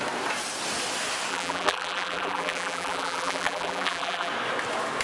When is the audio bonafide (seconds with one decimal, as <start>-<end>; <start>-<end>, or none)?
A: 0.0-1.3; 4.3-5.0